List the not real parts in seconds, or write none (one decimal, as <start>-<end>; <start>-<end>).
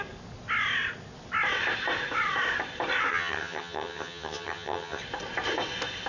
3.1-5.0